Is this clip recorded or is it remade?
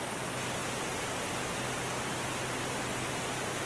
recorded